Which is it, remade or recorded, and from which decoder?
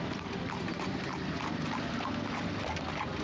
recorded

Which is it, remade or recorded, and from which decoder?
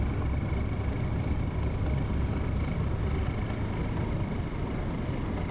recorded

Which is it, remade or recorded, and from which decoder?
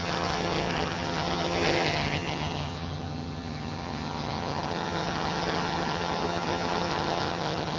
remade, vocoder, HiFi-GAN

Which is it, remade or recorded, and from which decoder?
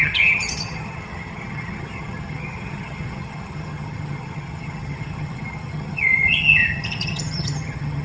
remade, vocoder, HiFi-GAN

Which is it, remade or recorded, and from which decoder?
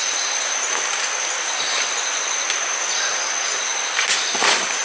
recorded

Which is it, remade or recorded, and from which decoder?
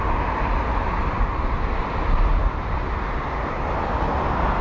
recorded